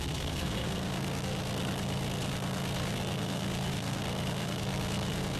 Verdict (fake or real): fake